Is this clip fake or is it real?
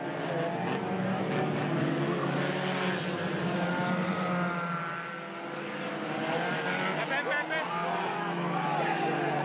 real